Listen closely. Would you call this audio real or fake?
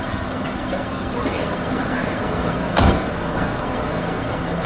fake